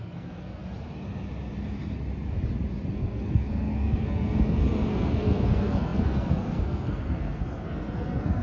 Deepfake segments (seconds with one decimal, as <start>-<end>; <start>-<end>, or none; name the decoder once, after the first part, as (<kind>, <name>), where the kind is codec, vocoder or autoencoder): 0.0-0.6 (codec, SNAC); 2.9-8.4